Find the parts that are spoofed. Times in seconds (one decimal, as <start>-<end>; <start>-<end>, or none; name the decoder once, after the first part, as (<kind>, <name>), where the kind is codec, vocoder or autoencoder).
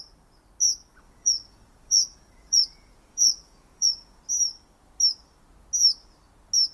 0.9-4.2 (vocoder, Vocos)